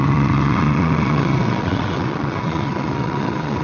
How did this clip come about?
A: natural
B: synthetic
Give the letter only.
B